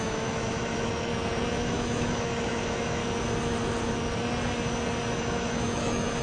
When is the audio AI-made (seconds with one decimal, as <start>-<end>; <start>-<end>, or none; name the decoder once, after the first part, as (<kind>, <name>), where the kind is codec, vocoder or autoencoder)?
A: 0.0-1.1 (autoencoder, DAC-VAE); 1.6-3.0; 5.2-6.2